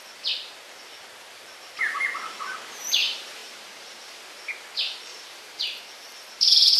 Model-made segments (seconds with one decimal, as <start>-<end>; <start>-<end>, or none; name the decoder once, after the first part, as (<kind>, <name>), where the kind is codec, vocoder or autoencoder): 3.4-4.2 (vocoder, BigVGAN v2); 5.1-6.8